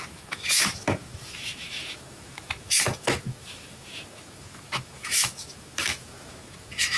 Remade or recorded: remade